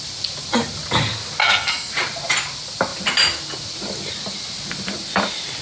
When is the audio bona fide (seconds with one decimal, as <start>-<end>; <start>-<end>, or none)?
0.0-1.4; 1.9-5.6